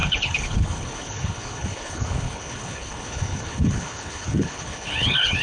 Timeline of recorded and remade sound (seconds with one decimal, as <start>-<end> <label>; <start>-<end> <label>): 0.0-5.4 remade